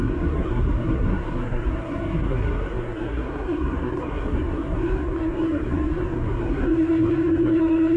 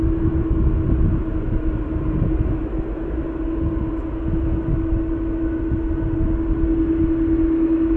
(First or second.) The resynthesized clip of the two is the first